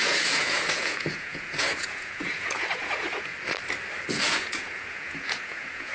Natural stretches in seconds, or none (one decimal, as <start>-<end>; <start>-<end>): 3.3-4.1